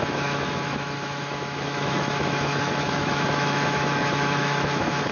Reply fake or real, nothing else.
fake